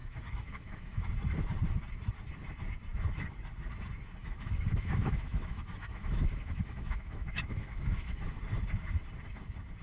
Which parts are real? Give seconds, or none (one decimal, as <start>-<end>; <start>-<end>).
1.1-4.2; 8.4-9.8